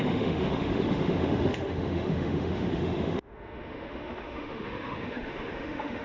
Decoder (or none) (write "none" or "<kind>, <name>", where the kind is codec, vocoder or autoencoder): autoencoder, DAC-VAE